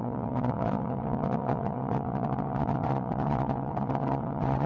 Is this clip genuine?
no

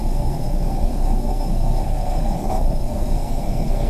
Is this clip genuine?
no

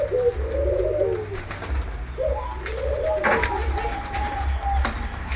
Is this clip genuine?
yes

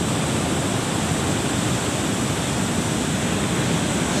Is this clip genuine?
yes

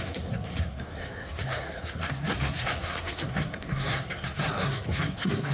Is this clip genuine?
no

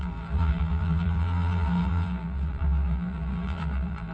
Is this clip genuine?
no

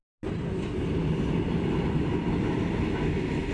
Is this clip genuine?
yes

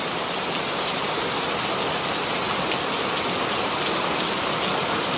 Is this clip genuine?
yes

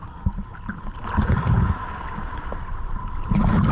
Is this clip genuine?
yes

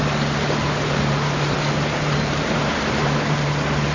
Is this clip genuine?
yes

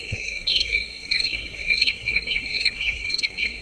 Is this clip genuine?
no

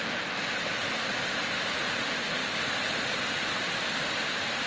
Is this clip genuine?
yes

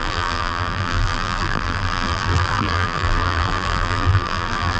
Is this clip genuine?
no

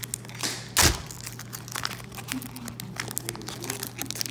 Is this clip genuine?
yes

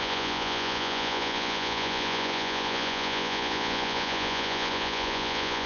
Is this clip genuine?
no